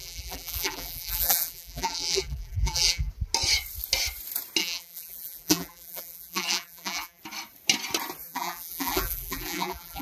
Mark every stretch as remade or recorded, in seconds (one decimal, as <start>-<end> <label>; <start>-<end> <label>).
0.0-3.1 remade; 3.1-4.6 recorded; 4.6-7.2 remade; 7.2-8.2 recorded; 8.2-10.0 remade